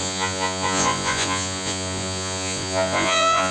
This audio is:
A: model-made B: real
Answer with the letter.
A